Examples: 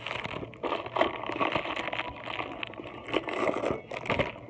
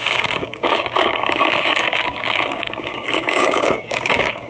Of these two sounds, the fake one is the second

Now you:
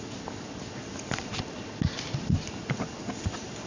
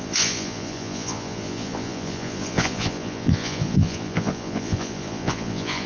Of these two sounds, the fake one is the second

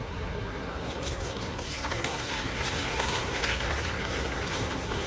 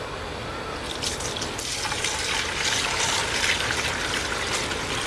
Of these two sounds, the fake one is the first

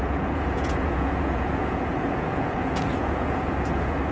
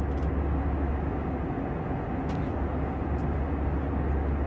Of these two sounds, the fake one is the first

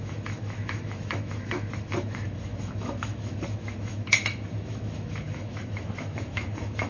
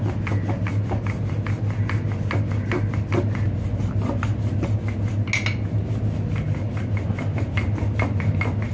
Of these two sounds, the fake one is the first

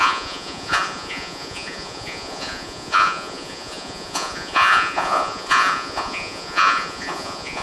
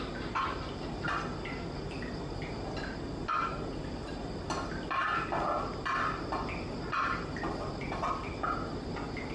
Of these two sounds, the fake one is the first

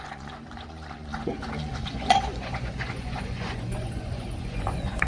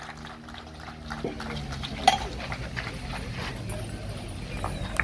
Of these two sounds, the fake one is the first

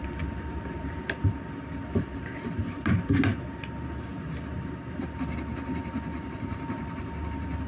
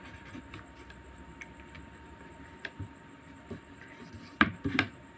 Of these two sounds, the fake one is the second